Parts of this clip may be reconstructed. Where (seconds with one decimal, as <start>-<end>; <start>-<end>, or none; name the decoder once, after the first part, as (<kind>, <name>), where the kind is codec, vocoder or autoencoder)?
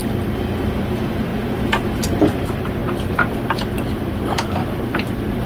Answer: 0.6-1.3 (vocoder, BigVGAN v2); 2.4-2.8; 3.3-5.5